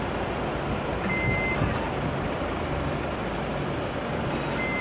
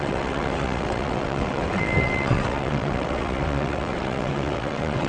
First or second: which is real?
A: first